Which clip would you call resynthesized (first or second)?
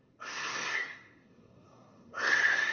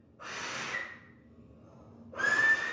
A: first